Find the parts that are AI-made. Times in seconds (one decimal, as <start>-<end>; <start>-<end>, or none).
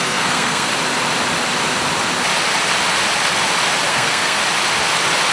0.0-0.7; 3.9-4.4